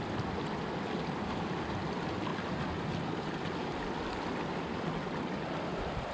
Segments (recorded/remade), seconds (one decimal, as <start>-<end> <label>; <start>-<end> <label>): 0.0-6.1 recorded

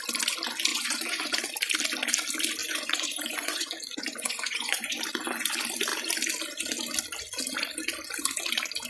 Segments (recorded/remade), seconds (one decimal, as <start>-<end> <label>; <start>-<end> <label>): 0.0-0.7 recorded; 0.7-1.4 remade; 1.4-2.6 recorded; 2.6-5.0 remade; 5.0-8.9 recorded

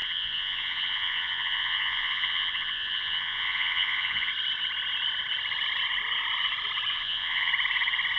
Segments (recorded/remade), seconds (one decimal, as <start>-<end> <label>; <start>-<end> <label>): 0.0-4.3 remade; 4.3-6.9 recorded; 6.9-7.5 remade; 7.5-8.2 recorded